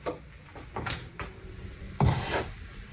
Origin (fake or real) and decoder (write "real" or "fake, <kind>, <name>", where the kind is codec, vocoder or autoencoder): real